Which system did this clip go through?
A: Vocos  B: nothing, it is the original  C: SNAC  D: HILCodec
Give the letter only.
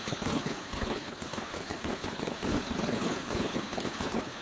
D